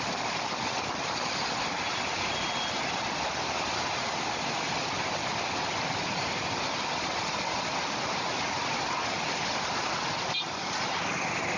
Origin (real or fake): real